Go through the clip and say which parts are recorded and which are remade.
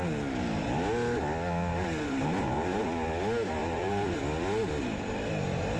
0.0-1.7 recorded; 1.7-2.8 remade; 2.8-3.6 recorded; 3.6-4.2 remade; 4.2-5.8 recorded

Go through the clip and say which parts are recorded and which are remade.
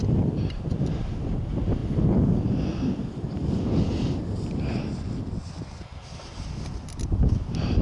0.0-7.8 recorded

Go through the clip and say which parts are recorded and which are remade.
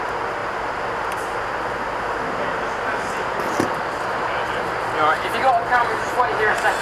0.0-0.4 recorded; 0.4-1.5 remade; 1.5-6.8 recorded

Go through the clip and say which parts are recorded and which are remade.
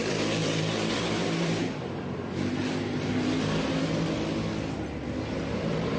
0.0-2.6 remade; 2.6-5.3 recorded; 5.3-6.0 remade